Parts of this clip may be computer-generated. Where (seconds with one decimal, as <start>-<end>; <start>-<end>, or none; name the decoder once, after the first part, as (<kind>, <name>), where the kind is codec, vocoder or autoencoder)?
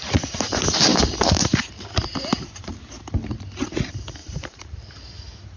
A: 0.9-2.8 (vocoder, BigVGAN v2); 4.2-4.8